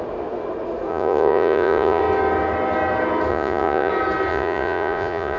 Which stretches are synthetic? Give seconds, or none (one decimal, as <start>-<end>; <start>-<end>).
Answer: 0.9-2.0; 3.3-3.9; 4.3-5.4